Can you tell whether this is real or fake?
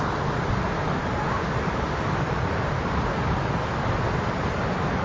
real